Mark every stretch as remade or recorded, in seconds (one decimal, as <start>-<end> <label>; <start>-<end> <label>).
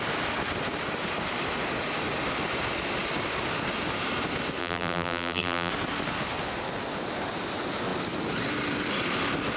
0.0-4.6 recorded; 4.6-5.7 remade; 5.7-9.6 recorded